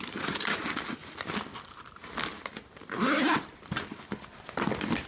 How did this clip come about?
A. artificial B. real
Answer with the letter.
B